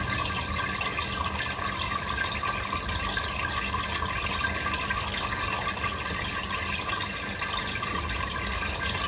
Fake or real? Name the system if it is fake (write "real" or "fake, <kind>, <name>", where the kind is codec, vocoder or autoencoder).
real